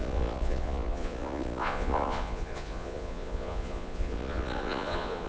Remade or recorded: remade